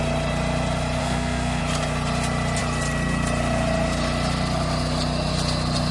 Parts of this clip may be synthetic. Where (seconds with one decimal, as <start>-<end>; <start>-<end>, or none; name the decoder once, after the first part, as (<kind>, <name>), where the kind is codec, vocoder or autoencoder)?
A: 1.0-1.6 (codec, SNAC)